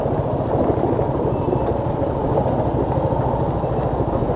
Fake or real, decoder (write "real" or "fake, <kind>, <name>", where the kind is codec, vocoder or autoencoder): real